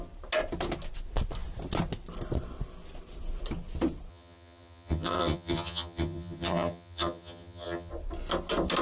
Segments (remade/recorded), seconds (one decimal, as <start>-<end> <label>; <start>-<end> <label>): 0.0-4.1 recorded; 4.1-7.9 remade; 7.9-8.8 recorded